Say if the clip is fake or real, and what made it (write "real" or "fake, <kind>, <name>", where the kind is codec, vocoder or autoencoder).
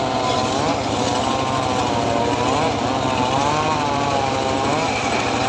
real